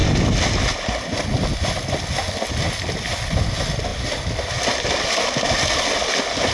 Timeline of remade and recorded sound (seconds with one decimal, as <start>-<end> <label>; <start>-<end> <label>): 0.0-6.5 recorded